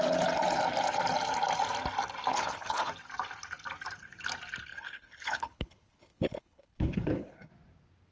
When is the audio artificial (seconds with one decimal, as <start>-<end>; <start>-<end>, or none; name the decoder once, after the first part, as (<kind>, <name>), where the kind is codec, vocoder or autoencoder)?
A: 2.3-2.9 (codec, HILCodec); 4.7-7.5